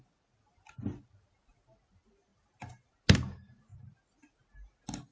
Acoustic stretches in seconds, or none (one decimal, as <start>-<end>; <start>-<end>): 0.0-2.3; 2.9-5.1